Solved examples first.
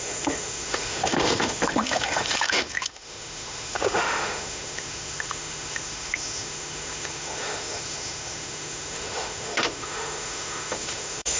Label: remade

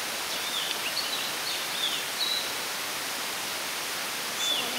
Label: recorded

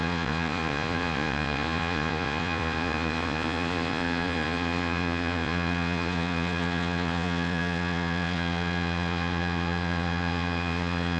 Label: remade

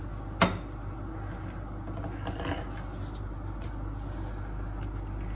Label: recorded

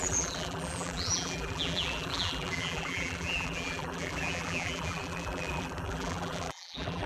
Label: remade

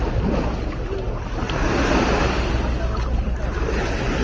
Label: recorded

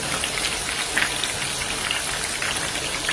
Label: recorded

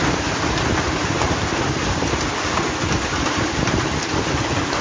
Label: recorded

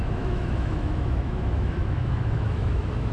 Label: remade